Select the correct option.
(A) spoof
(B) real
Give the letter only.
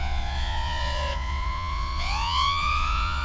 A